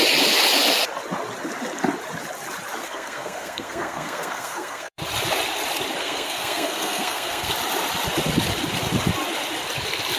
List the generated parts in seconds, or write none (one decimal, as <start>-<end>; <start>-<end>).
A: 2.8-5.0; 6.0-7.5